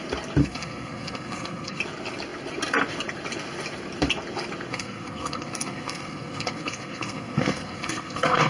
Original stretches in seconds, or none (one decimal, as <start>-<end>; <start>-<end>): 0.0-0.4; 1.8-4.7